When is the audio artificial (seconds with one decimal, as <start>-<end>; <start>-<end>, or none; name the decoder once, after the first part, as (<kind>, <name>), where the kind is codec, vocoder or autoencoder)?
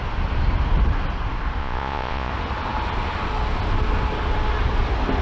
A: 1.6-2.3 (vocoder, Vocos)